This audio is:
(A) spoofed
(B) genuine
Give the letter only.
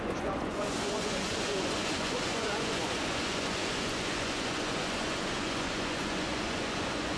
A